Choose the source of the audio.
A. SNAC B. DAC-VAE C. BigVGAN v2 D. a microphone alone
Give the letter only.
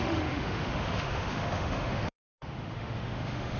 B